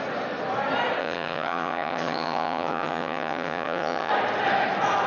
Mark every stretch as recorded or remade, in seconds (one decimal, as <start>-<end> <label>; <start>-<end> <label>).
0.0-1.0 recorded; 1.0-4.1 remade; 4.1-5.1 recorded